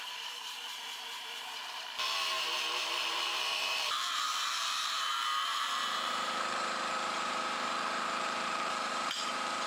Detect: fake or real fake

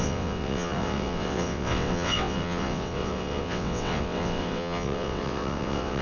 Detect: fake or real fake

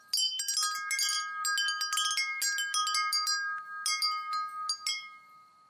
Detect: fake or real real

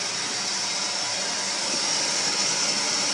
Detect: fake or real real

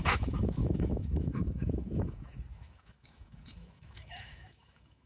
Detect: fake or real fake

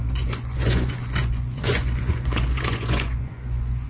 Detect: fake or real fake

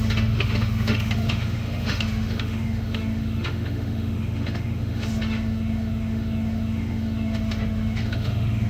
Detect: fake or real fake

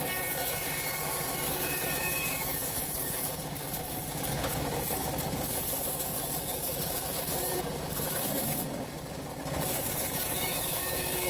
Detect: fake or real fake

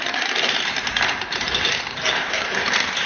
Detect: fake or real fake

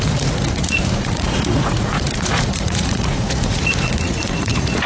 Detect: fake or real fake